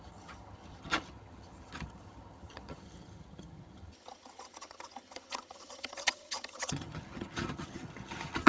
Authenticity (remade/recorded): remade